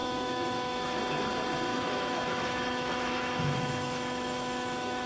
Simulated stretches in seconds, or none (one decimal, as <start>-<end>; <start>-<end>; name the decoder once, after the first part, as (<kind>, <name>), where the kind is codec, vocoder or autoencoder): 0.0-1.0 (autoencoder, DAC-VAE); 1.7-5.1